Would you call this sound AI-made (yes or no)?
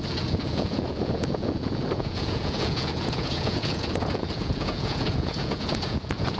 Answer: yes